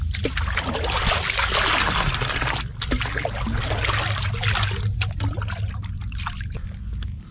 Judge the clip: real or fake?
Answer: real